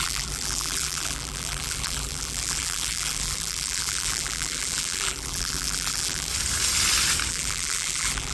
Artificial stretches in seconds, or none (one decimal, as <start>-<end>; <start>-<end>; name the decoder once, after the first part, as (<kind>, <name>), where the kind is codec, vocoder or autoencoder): 0.0-6.3 (vocoder, BigVGAN v2); 7.3-8.3